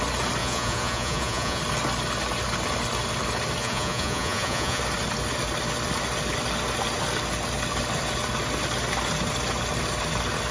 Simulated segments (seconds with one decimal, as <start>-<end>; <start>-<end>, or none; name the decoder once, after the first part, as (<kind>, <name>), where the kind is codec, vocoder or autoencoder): 0.4-1.6 (vocoder, Vocos); 3.6-4.8